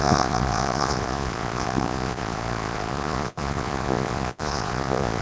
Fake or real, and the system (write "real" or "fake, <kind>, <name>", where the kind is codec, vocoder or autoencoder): fake, vocoder, Vocos